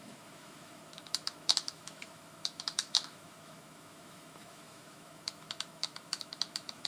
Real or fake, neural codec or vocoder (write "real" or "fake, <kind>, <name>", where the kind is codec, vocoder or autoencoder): fake, autoencoder, DAC-VAE